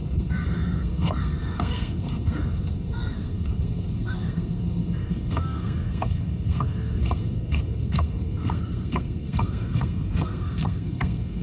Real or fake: fake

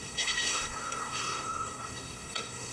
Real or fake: fake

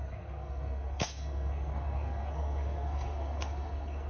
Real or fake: fake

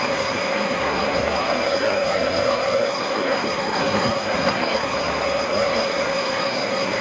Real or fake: fake